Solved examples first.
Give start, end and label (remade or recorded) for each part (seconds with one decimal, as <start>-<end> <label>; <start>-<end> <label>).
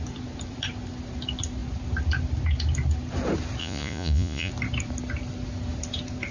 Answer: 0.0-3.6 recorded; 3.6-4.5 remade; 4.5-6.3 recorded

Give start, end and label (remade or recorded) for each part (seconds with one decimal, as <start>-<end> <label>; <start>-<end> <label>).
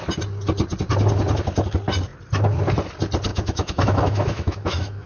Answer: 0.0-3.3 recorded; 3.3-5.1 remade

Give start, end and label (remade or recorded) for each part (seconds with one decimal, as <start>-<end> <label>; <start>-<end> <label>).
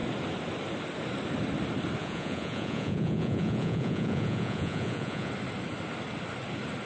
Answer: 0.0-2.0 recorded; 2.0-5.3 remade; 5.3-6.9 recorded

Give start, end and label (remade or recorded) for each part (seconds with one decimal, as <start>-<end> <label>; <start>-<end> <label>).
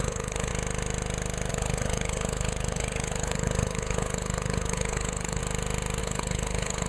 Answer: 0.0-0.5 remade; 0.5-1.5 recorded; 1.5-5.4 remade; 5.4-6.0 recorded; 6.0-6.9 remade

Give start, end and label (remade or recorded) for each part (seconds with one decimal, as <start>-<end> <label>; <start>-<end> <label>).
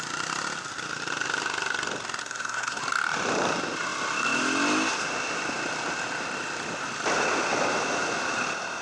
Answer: 0.0-2.2 recorded; 2.2-2.8 remade; 2.8-8.8 recorded